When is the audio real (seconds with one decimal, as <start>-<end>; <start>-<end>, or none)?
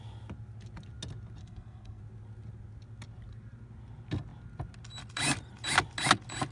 0.0-1.4; 2.0-6.5